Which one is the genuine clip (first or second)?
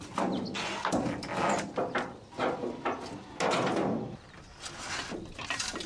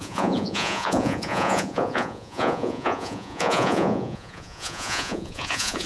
first